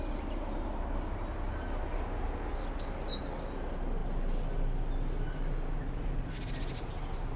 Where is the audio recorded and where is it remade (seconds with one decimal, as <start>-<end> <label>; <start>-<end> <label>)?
0.0-7.4 recorded